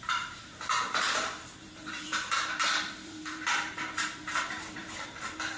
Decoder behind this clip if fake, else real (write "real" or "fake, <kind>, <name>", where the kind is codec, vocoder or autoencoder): fake, vocoder, BigVGAN v2